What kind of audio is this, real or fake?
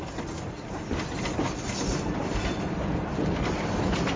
real